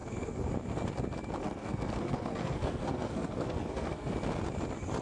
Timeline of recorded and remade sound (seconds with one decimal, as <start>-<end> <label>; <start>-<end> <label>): 0.0-0.5 remade; 0.5-1.4 recorded; 1.4-4.1 remade; 4.1-5.0 recorded